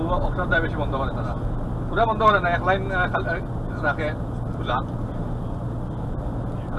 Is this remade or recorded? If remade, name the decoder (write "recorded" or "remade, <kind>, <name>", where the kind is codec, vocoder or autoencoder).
recorded